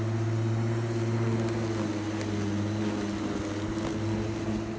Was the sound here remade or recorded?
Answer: recorded